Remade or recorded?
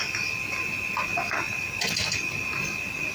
recorded